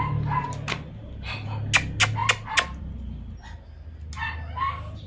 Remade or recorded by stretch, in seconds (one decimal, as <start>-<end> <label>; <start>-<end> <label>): 0.0-5.1 recorded